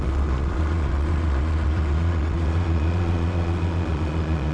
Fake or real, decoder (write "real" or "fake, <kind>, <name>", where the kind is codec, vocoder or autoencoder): fake, vocoder, Vocos